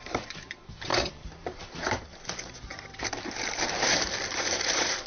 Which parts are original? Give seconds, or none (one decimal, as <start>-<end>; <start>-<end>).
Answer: none